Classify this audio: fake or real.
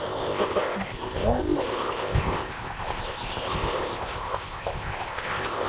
fake